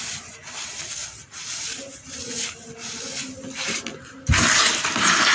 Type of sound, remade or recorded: recorded